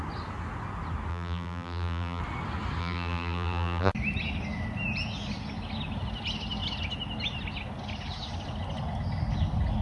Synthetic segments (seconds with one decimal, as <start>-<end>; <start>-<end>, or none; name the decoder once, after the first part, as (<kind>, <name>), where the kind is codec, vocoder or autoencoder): 1.1-2.2 (vocoder, BigVGAN v2); 2.8-3.9